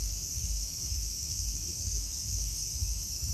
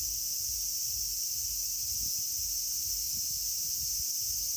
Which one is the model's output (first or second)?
first